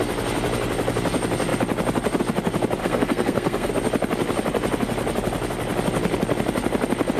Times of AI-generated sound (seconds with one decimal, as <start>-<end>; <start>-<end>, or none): 2.8-3.7